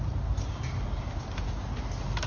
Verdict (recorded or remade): recorded